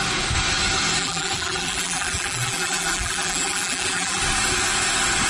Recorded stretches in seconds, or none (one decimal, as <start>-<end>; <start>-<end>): 0.0-1.0; 4.2-5.3